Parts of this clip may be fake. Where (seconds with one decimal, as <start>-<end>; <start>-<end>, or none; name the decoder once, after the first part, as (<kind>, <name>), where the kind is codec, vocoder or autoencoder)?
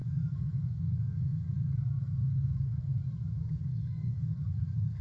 0.0-3.0 (codec, SNAC); 3.6-5.0